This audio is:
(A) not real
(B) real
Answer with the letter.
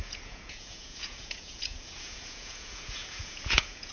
A